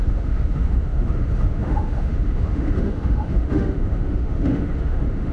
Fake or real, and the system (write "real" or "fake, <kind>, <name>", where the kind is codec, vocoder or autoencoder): fake, autoencoder, DAC-VAE